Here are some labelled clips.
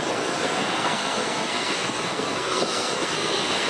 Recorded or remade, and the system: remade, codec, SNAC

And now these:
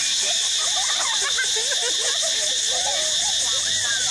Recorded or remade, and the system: recorded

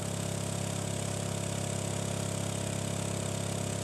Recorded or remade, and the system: recorded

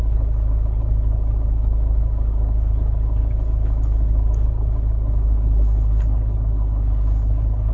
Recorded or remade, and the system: remade, codec, HILCodec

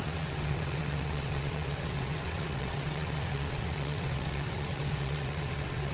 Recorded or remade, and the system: remade, vocoder, WaveNeXt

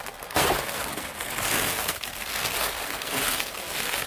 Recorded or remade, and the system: remade, codec, SNAC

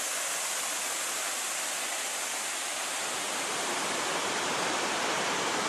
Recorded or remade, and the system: recorded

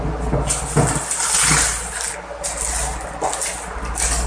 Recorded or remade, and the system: recorded